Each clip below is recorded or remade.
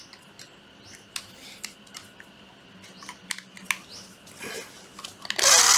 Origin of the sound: recorded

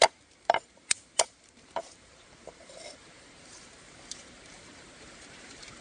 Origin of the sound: remade